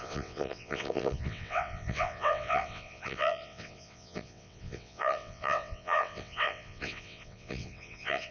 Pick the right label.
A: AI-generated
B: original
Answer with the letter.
A